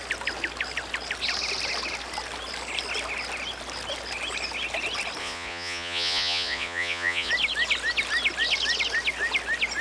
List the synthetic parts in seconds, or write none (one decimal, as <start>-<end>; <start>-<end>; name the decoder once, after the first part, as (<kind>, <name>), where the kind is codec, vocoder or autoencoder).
5.2-7.3 (vocoder, Vocos)